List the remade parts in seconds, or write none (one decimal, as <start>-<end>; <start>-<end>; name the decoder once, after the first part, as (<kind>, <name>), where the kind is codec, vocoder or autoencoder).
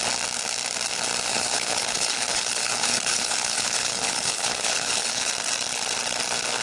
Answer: 1.3-5.3 (codec, HILCodec)